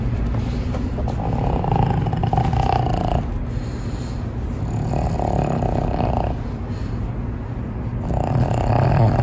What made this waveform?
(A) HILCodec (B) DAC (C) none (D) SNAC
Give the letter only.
C